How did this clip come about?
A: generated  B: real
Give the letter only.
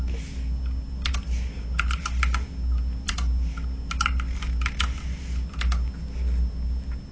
B